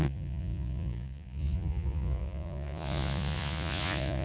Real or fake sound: fake